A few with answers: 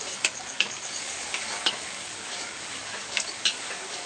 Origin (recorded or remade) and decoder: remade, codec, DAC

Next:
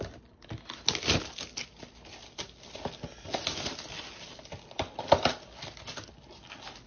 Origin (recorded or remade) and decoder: recorded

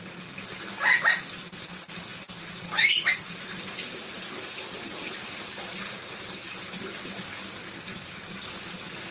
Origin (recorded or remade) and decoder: recorded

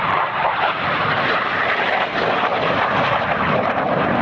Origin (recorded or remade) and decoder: remade, vocoder, BigVGAN v2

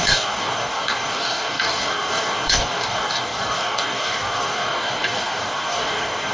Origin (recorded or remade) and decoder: remade, codec, DAC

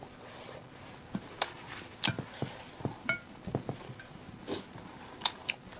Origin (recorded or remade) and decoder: remade, vocoder, BigVGAN v2